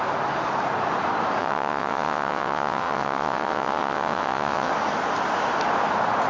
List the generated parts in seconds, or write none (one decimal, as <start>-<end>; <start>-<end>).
1.4-4.7